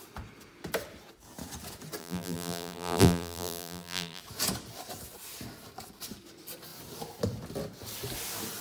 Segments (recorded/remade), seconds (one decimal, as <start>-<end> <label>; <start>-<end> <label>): 0.0-2.0 recorded; 2.0-4.2 remade; 4.2-8.6 recorded